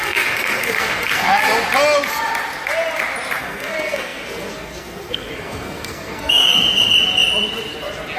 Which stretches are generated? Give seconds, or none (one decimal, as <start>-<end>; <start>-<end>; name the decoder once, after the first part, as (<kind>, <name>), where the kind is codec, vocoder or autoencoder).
0.0-1.4 (codec, SNAC); 3.4-6.5